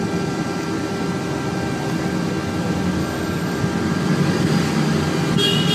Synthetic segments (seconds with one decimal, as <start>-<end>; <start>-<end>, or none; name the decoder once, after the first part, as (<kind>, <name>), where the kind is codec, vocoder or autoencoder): 3.0-3.6 (codec, DAC)